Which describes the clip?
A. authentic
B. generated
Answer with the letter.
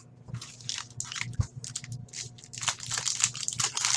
A